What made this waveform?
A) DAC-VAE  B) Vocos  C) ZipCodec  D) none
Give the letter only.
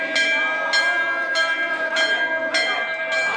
D